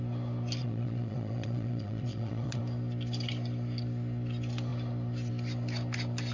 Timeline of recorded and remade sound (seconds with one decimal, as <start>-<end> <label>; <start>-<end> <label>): 0.0-0.6 recorded; 0.6-2.6 remade; 2.6-6.3 recorded